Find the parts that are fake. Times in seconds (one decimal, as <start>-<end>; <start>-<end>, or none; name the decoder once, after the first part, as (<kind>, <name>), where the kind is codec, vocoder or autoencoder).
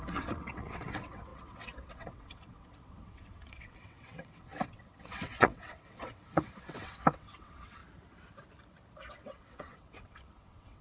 0.0-7.8 (vocoder, WaveNeXt); 9.1-10.8